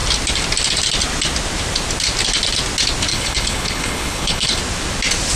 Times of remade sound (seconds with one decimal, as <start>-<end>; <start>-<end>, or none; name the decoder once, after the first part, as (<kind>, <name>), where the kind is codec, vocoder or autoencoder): 3.1-4.6 (codec, HILCodec)